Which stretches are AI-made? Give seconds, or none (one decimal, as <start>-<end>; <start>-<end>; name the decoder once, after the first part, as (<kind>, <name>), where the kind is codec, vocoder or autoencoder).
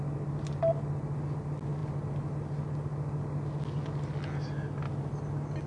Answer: none